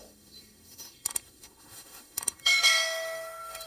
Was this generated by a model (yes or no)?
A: yes